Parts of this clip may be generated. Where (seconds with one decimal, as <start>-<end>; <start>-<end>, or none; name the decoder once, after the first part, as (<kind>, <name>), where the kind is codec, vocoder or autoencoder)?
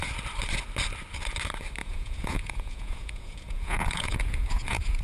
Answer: 1.8-5.0 (vocoder, Vocos)